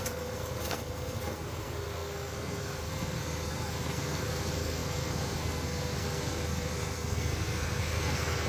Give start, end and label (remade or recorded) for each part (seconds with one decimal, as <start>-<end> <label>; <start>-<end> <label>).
0.0-8.5 remade

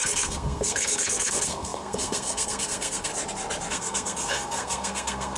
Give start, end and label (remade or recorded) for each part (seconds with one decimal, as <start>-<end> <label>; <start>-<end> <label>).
0.0-3.1 remade; 3.1-3.7 recorded; 3.7-5.4 remade

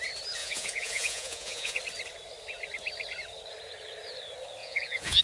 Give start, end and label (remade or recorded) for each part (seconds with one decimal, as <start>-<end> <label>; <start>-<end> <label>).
0.0-0.4 recorded; 0.4-1.8 remade; 1.8-4.6 recorded; 4.6-5.2 remade

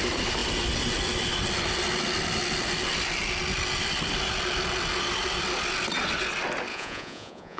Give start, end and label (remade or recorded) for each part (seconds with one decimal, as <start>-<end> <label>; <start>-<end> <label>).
0.0-6.7 recorded; 6.7-7.6 remade